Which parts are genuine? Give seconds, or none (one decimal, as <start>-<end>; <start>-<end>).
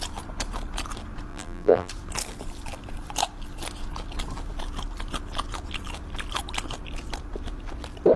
0.0-1.3; 1.9-8.2